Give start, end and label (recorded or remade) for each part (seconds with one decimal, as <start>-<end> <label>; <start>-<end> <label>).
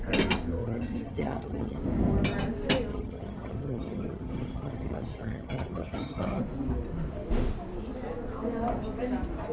0.0-0.6 recorded; 0.6-1.8 remade; 1.8-2.9 recorded; 2.9-6.4 remade; 6.4-9.5 recorded